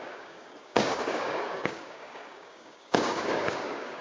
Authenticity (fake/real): fake